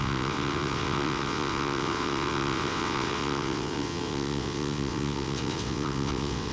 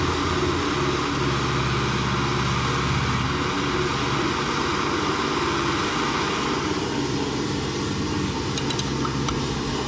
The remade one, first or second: first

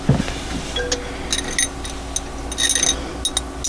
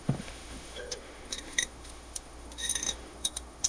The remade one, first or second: second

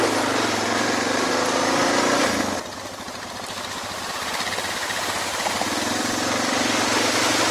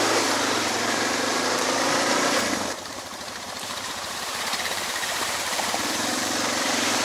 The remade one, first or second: second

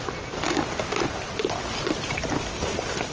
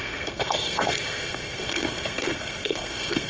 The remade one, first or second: second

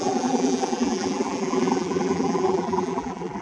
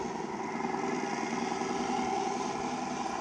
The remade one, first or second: first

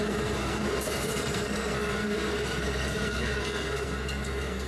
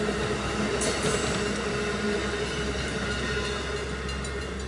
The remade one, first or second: first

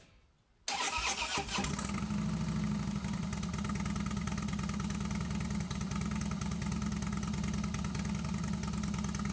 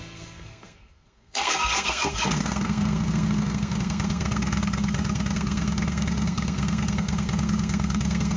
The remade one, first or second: second